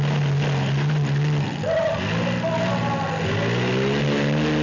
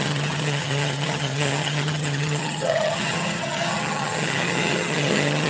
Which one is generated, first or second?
second